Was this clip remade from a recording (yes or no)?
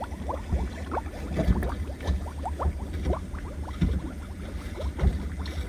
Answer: no